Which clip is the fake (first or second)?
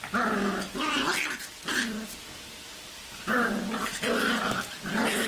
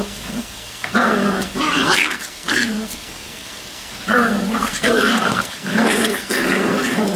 second